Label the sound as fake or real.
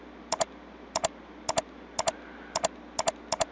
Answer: real